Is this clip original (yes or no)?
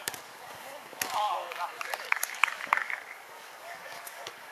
no